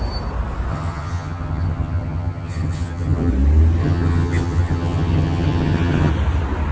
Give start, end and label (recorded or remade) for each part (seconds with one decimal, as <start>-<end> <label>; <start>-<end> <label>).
0.0-0.7 recorded; 0.7-3.3 remade; 3.3-3.8 recorded; 3.8-6.1 remade; 6.1-6.7 recorded